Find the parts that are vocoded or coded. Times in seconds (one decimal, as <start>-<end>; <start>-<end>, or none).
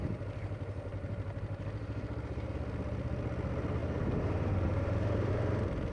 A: 0.9-2.5; 3.8-5.3